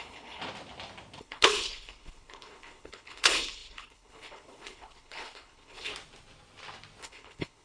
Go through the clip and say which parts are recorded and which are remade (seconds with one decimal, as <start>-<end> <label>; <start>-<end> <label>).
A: 0.0-0.4 remade; 0.4-1.2 recorded; 1.2-5.9 remade; 5.9-7.0 recorded; 7.0-7.6 remade